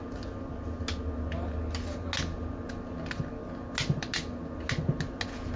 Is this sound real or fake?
real